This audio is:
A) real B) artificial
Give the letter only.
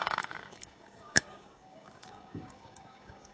B